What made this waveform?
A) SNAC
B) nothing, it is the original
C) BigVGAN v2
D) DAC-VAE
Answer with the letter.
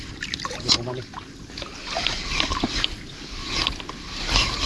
B